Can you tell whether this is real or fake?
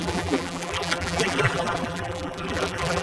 fake